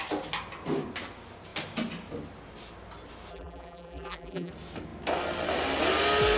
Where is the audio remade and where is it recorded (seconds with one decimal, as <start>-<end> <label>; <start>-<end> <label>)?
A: 0.0-3.3 recorded; 3.3-4.5 remade; 4.5-6.4 recorded